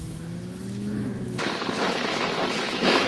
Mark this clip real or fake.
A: fake